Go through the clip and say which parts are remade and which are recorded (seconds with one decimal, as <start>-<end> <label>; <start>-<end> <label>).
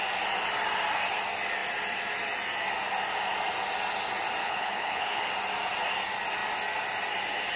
0.0-4.4 recorded; 4.4-5.3 remade; 5.3-7.6 recorded